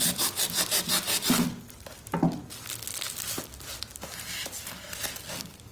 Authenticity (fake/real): real